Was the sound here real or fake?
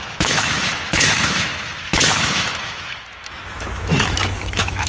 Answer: fake